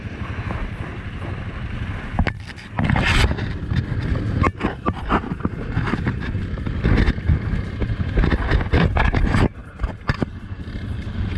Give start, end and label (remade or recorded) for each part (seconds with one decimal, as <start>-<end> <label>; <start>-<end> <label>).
0.0-9.6 recorded; 9.6-10.7 remade; 10.7-11.4 recorded